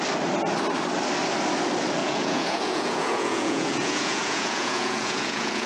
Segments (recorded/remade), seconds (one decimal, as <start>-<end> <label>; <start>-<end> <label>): 0.0-2.0 recorded; 2.0-5.7 remade